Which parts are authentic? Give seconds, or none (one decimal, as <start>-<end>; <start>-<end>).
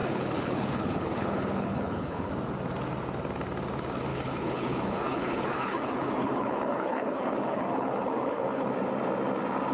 2.3-4.1; 8.7-9.7